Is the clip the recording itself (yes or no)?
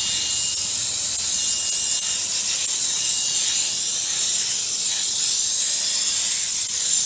yes